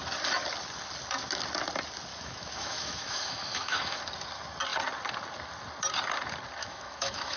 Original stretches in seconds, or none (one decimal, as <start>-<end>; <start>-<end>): 0.0-2.1; 4.0-6.6